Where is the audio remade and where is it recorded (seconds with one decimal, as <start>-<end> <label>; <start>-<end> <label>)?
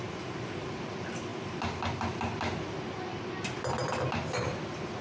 0.0-5.0 recorded